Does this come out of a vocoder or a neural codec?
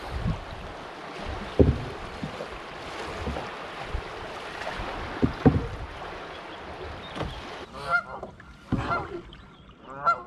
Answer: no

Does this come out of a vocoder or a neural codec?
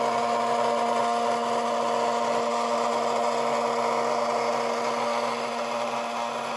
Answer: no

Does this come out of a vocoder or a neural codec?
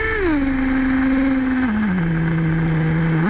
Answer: no